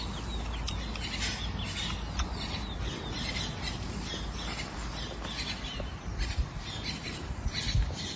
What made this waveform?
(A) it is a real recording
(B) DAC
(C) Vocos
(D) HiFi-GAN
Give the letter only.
A